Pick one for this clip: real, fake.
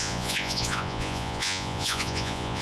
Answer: fake